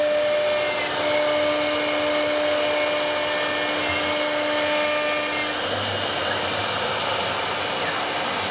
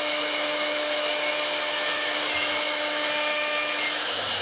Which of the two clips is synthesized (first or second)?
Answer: second